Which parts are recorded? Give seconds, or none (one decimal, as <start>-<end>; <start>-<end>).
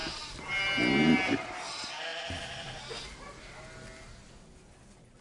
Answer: 0.0-5.2